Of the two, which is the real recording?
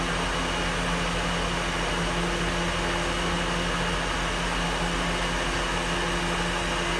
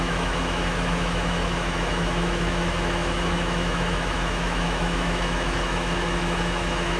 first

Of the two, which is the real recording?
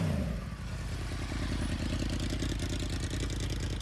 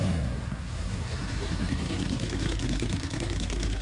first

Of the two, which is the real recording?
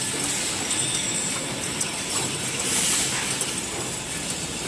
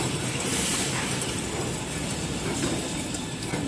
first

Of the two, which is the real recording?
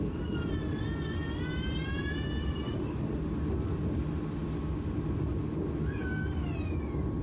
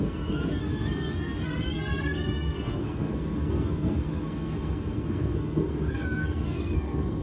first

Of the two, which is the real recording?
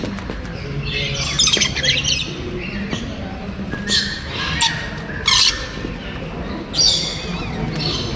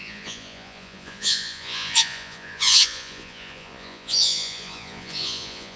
first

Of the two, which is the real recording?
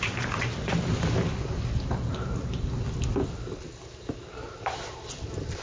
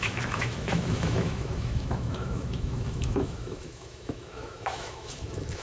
first